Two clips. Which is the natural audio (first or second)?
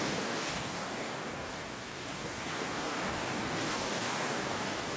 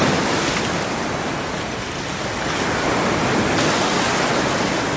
second